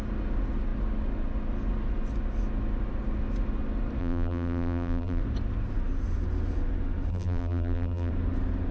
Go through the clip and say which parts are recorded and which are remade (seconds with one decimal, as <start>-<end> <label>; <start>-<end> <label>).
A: 0.0-4.0 recorded; 4.0-5.2 remade; 5.2-7.1 recorded; 7.1-8.1 remade; 8.1-8.7 recorded

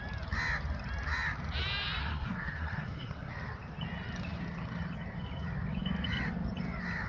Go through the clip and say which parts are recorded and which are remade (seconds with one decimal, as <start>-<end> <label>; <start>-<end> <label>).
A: 0.0-2.0 recorded; 2.0-3.3 remade; 3.3-7.1 recorded

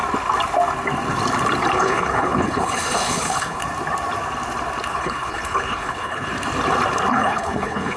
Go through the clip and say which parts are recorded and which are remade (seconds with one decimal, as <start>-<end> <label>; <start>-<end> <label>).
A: 0.0-1.7 recorded; 1.7-3.6 remade; 3.6-4.9 recorded; 4.9-6.3 remade; 6.3-7.1 recorded; 7.1-8.0 remade

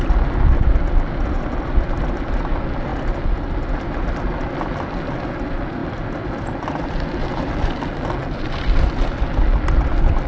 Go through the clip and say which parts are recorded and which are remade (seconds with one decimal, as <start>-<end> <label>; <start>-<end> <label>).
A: 0.0-10.3 recorded

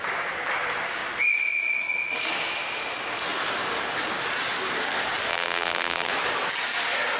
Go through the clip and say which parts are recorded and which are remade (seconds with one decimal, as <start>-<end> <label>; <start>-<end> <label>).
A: 0.0-5.3 recorded; 5.3-6.1 remade; 6.1-7.2 recorded

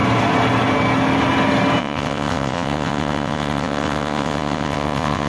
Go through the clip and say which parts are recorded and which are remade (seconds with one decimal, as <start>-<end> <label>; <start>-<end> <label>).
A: 0.0-1.8 recorded; 1.8-5.3 remade

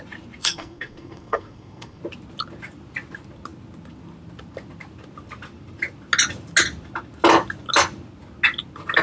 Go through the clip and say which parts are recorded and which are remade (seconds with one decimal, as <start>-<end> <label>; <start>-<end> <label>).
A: 0.0-0.4 recorded; 0.4-2.0 remade; 2.0-9.0 recorded